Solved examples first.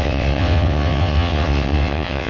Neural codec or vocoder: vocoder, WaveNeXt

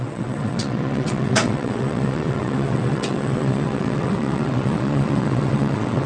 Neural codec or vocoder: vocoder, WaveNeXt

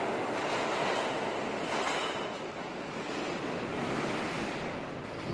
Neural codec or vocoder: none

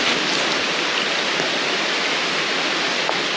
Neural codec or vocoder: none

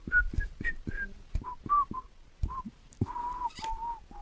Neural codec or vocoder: none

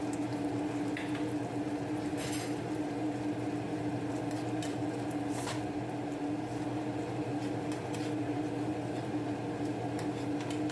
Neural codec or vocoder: none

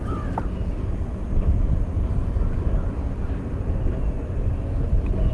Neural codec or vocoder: none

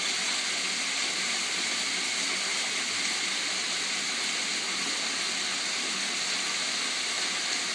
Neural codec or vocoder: none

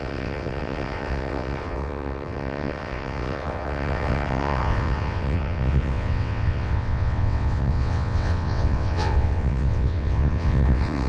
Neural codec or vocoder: vocoder, WaveNeXt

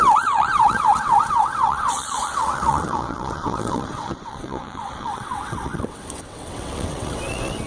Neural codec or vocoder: vocoder, WaveNeXt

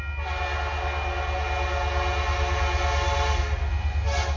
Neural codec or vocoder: none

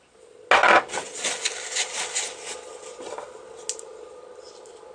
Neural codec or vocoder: none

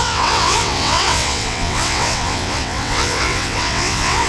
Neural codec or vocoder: vocoder, WaveNeXt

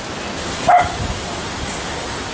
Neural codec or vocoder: none